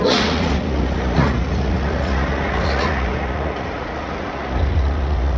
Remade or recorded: remade